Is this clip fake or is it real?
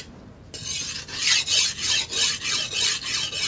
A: real